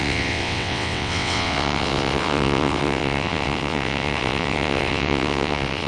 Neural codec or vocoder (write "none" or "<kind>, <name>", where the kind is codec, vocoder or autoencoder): vocoder, WaveNeXt